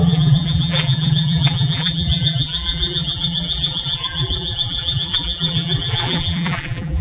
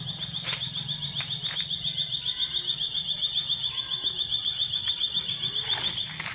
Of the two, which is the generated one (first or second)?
first